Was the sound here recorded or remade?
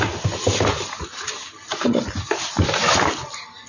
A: recorded